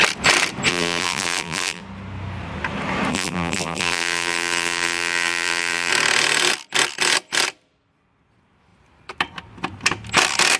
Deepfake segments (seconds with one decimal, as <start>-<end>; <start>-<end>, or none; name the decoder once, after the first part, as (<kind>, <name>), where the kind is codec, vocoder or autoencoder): 0.7-1.8 (vocoder, BigVGAN v2); 3.1-5.9